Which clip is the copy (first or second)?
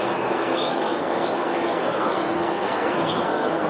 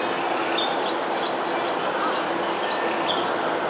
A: first